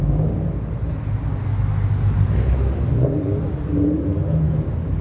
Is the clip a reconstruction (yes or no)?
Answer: no